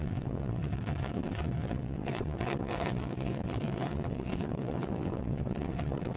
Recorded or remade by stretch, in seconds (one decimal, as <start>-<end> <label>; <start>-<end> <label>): 0.0-6.2 remade